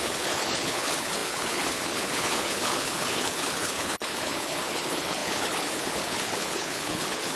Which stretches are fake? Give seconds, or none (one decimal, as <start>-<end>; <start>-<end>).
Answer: 0.0-7.4